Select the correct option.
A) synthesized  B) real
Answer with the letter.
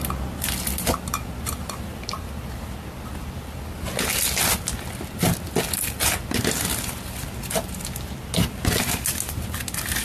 B